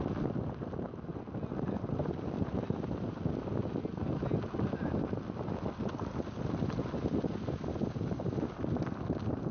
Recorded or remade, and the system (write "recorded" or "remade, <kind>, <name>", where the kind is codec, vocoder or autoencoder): recorded